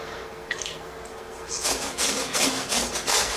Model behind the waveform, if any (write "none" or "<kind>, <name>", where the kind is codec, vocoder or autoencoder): codec, SNAC